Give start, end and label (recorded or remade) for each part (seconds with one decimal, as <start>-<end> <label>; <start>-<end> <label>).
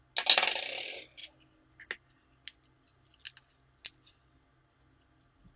0.0-5.6 recorded